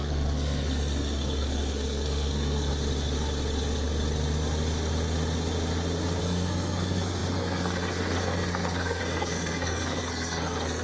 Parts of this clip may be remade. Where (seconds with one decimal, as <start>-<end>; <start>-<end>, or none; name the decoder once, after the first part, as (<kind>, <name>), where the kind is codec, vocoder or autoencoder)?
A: 0.0-2.7 (codec, SNAC); 6.2-10.8